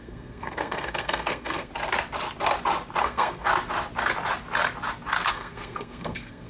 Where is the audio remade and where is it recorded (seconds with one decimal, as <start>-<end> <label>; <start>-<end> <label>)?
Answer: 0.0-1.7 remade; 1.7-3.0 recorded; 3.0-3.5 remade; 3.5-5.3 recorded; 5.3-6.5 remade